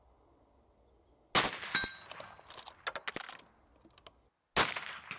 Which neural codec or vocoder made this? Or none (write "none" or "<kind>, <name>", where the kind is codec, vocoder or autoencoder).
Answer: none